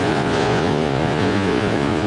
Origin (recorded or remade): remade